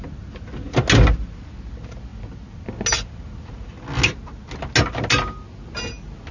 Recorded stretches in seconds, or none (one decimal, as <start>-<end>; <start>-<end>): 0.0-6.3